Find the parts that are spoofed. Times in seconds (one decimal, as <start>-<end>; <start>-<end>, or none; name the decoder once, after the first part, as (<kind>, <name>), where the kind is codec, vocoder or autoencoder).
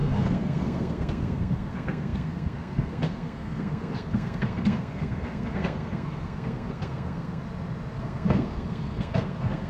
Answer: 0.0-7.4 (codec, SNAC); 8.0-9.7